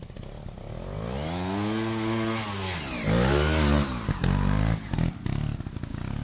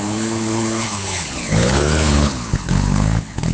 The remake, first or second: second